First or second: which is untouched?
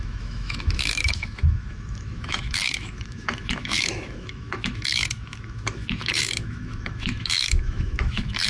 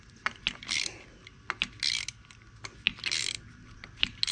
second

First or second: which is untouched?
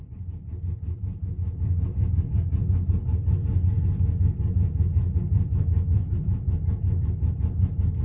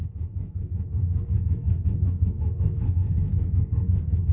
first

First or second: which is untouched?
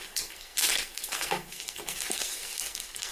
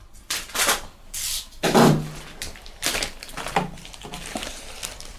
second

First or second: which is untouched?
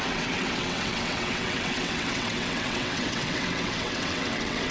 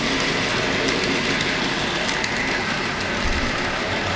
second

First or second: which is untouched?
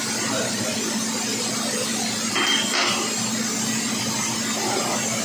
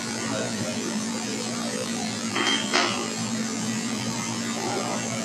first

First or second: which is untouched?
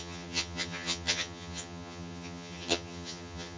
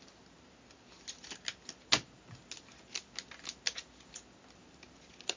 second